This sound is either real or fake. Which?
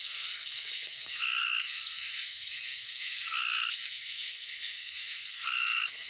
fake